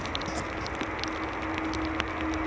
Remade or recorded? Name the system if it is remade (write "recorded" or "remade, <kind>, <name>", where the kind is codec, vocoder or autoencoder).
recorded